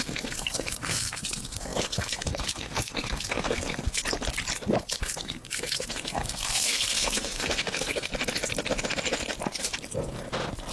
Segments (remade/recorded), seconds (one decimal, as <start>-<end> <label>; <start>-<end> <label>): 0.0-4.0 remade; 4.0-4.8 recorded; 4.8-8.1 remade; 8.1-10.7 recorded

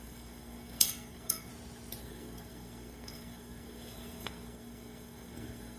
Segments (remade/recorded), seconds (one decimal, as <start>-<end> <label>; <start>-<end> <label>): 0.0-1.5 remade; 1.5-2.0 recorded; 2.0-5.8 remade

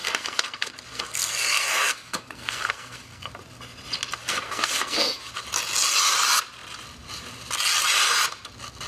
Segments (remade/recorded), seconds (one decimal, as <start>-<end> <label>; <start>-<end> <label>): 0.0-3.3 remade; 3.3-4.2 recorded; 4.2-5.3 remade; 5.3-8.9 recorded

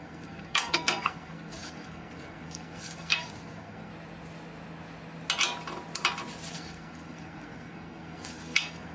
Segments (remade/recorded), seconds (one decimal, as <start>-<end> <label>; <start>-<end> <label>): 0.0-3.9 remade; 3.9-6.5 recorded; 6.5-8.9 remade

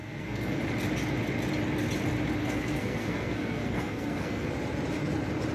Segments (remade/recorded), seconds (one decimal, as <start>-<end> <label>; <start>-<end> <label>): 0.0-0.6 remade; 0.6-2.4 recorded; 2.4-4.5 remade; 4.5-5.5 recorded

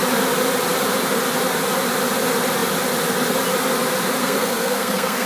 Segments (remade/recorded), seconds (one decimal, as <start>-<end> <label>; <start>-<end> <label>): 0.0-4.2 recorded; 4.2-5.3 remade

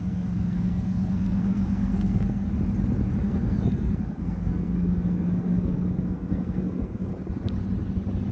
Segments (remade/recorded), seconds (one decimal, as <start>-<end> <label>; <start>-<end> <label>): 0.0-2.5 remade; 2.5-3.1 recorded; 3.1-7.1 remade; 7.1-8.3 recorded